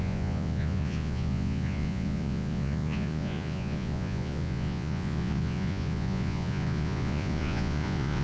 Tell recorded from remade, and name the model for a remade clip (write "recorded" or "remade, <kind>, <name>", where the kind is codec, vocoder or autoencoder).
remade, vocoder, Vocos